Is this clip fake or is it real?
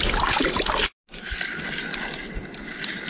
real